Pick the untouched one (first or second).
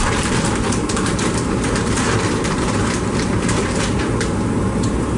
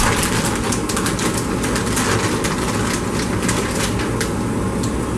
second